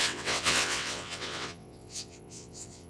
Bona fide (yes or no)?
no